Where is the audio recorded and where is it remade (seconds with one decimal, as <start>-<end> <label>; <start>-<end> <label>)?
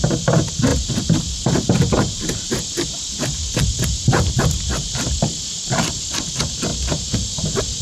0.0-0.7 recorded; 0.7-5.4 remade; 5.4-7.8 recorded